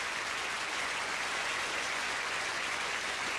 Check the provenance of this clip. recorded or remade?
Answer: remade